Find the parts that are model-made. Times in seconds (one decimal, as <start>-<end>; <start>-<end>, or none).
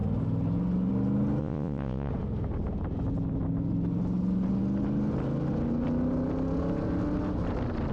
1.4-2.1